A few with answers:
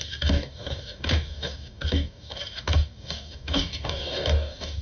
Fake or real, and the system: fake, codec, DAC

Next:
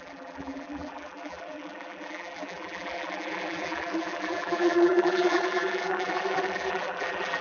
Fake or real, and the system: fake, vocoder, BigVGAN v2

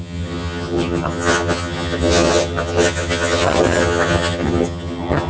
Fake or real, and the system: fake, vocoder, HiFi-GAN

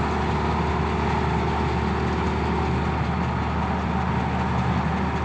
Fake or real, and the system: real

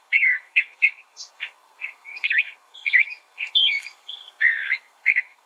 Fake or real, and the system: fake, codec, SNAC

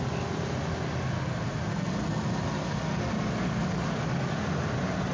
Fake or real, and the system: real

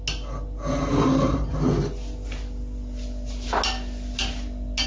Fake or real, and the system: real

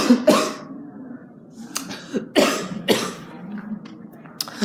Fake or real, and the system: real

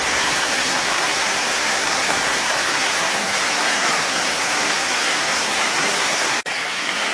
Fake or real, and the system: fake, codec, SNAC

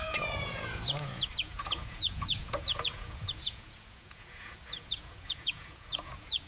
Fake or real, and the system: fake, vocoder, Vocos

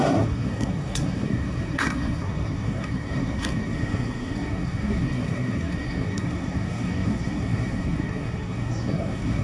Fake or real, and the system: fake, codec, SNAC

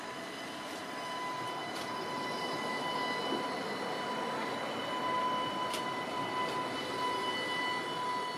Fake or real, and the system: real